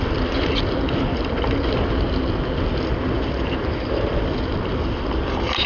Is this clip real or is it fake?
real